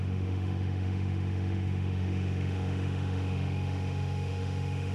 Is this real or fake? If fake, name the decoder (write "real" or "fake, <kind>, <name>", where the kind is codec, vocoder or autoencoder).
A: fake, autoencoder, DAC-VAE